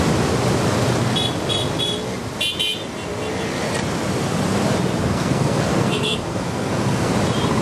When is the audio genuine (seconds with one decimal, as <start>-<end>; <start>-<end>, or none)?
0.0-5.0; 7.1-7.6